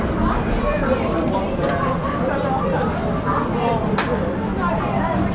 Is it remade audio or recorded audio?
remade